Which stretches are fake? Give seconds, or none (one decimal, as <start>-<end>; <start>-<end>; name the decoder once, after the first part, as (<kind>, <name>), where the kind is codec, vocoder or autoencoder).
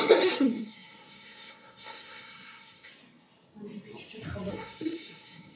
0.0-2.9 (codec, SNAC); 4.5-5.6